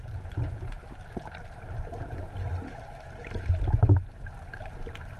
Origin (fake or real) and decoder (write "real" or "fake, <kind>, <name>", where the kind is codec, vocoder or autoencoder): real